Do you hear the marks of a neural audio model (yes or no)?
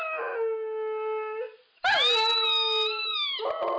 no